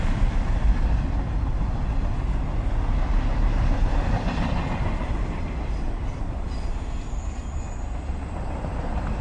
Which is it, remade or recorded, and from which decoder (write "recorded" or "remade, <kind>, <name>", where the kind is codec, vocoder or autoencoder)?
recorded